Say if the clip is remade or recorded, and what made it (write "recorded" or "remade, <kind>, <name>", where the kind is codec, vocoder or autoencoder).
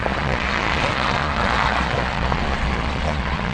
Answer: remade, vocoder, Vocos